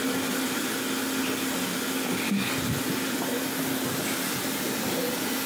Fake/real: real